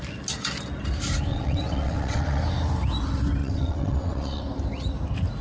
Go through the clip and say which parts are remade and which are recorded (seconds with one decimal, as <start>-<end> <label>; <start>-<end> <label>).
0.0-1.3 recorded; 1.3-2.4 remade; 2.4-3.4 recorded; 3.4-4.4 remade; 4.4-5.4 recorded